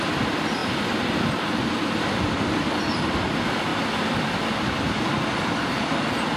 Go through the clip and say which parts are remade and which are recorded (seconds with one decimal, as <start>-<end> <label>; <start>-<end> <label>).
0.0-3.7 remade; 3.7-5.5 recorded; 5.5-6.4 remade